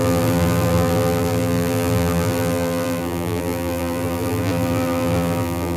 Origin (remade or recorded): remade